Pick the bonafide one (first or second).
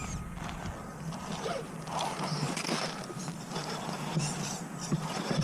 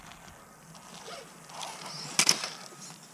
second